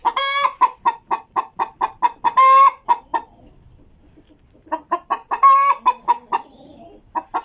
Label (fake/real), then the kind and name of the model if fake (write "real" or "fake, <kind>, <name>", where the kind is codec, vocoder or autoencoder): real